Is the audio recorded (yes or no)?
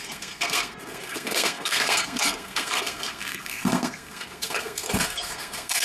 no